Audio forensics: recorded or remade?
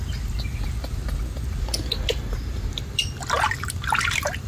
recorded